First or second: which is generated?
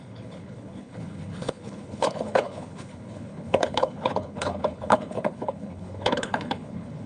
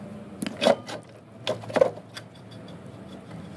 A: first